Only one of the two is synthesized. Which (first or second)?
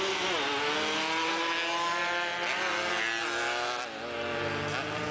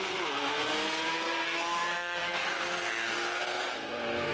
second